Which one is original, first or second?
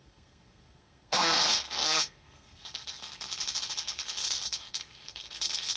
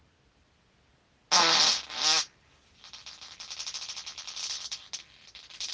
second